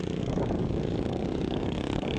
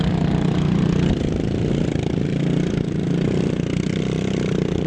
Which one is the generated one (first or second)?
first